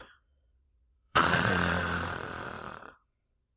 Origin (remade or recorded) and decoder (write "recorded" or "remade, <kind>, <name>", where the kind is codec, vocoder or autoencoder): remade, vocoder, Vocos